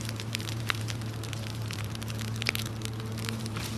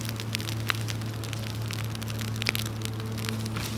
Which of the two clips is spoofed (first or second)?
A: first